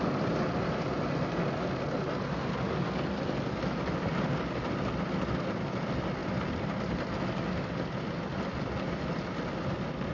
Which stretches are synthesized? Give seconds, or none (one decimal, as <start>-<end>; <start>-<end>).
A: none